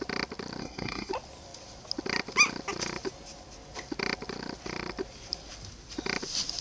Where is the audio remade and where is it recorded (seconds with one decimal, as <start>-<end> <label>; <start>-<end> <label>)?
0.0-0.6 recorded; 0.6-1.1 remade; 1.1-6.6 recorded

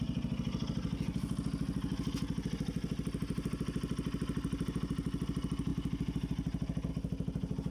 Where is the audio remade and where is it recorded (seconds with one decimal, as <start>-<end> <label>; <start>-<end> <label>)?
0.0-7.7 recorded

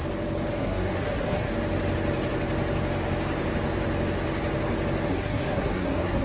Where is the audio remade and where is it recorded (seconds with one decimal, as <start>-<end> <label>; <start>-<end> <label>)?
0.0-0.6 recorded; 0.6-1.5 remade; 1.5-5.1 recorded; 5.1-6.2 remade